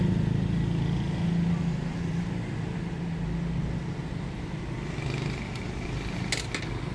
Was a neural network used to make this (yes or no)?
no